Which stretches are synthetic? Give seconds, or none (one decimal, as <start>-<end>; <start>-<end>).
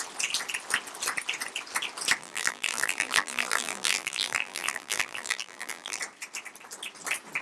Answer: 2.2-6.0